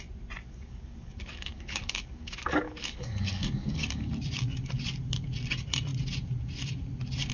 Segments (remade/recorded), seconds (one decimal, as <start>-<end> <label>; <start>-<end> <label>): 0.0-0.4 recorded; 0.4-4.1 remade; 4.1-7.3 recorded